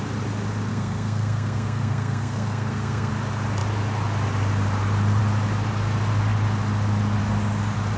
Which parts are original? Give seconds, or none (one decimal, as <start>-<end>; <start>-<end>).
0.0-0.7; 3.1-8.0